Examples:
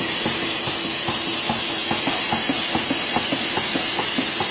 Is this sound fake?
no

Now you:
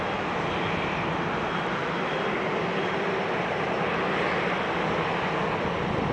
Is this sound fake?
no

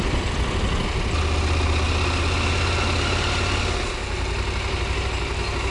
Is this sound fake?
no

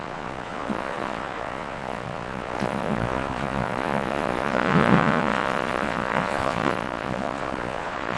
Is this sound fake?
yes